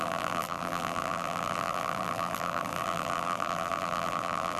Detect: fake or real fake